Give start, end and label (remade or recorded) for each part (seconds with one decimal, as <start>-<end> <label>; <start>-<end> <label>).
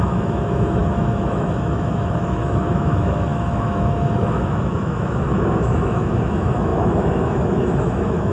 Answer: 0.0-8.3 remade